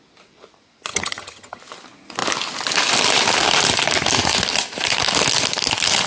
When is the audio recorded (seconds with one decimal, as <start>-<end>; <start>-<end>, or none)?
0.0-0.9; 1.6-6.1